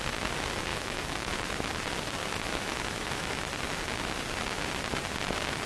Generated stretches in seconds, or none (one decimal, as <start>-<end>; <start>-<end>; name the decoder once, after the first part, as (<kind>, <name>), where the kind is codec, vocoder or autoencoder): 0.7-1.3 (autoencoder, DAC-VAE); 2.2-3.4